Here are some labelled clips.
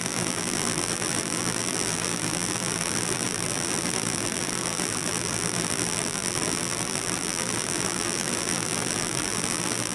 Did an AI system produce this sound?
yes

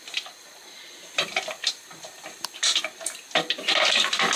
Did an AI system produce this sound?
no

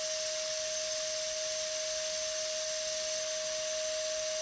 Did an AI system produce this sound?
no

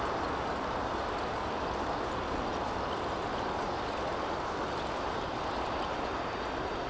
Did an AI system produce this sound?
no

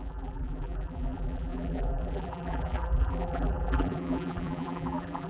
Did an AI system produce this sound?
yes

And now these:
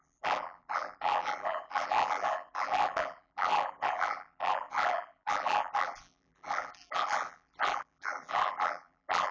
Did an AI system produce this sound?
yes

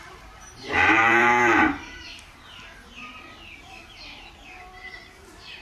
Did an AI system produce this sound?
yes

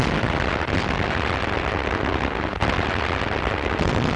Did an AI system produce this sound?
no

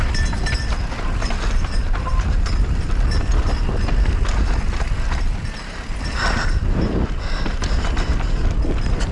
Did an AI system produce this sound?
no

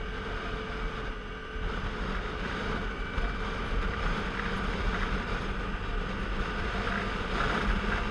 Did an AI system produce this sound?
no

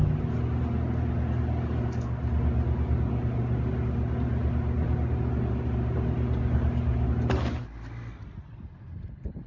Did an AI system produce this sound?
no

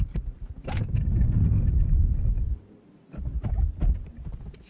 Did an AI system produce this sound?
yes